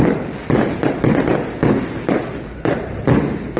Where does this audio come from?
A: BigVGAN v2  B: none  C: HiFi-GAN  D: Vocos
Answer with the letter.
B